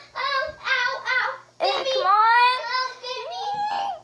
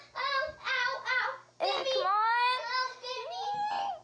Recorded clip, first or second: second